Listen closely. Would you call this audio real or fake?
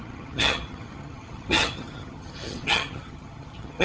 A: fake